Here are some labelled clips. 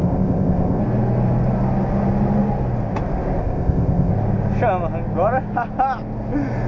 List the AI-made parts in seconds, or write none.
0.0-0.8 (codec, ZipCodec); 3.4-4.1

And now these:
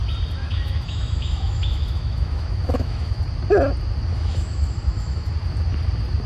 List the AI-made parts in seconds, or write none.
0.4-3.2 (autoencoder, DAC-VAE); 4.1-5.3

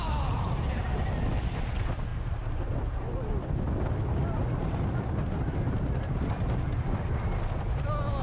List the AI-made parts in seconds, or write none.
none